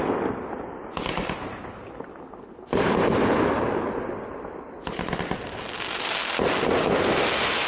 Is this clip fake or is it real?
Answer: real